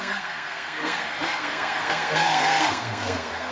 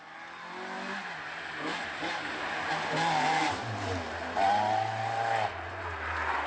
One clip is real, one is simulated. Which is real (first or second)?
second